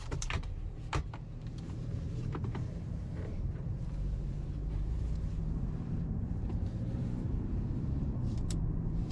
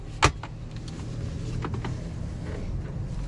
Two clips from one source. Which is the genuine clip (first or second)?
second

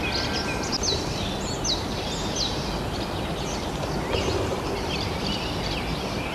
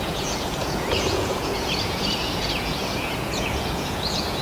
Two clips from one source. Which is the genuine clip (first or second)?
first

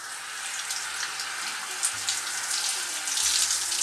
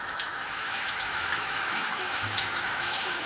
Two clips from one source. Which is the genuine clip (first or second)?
first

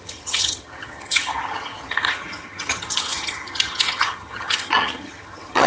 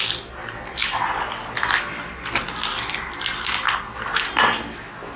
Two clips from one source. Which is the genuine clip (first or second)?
second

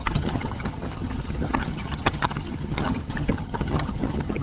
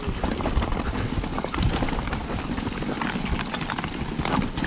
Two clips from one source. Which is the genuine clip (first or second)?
second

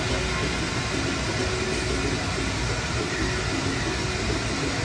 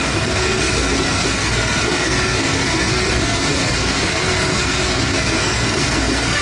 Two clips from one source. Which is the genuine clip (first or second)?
first